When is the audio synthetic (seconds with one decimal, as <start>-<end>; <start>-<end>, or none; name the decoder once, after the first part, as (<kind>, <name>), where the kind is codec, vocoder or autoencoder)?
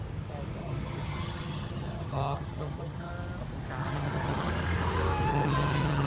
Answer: 0.6-3.1 (vocoder, HiFi-GAN); 3.8-4.5; 5.3-6.1